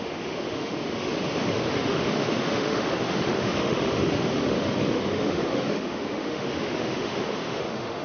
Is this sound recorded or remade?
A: remade